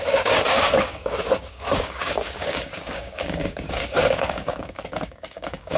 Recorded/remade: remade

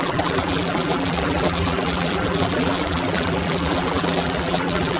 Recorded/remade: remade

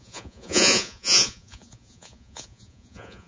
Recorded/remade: remade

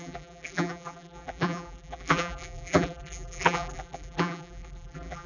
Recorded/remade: remade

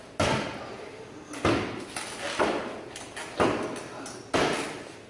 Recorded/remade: recorded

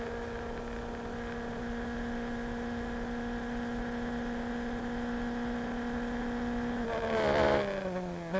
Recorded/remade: recorded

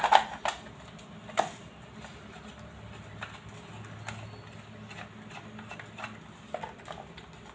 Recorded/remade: recorded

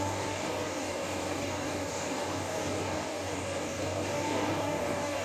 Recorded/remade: remade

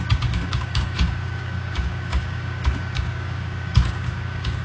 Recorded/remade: remade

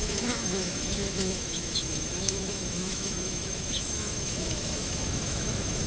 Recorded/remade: remade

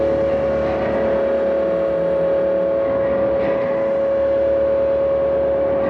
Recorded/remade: recorded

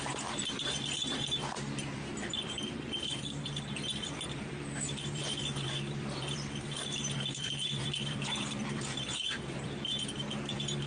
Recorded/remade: remade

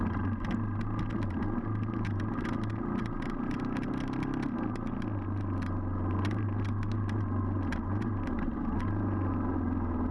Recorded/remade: recorded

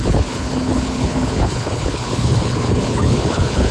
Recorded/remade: remade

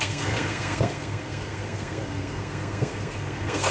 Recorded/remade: remade